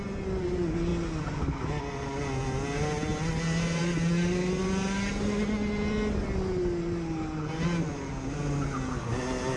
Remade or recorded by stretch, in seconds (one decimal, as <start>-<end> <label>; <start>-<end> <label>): 0.0-9.6 recorded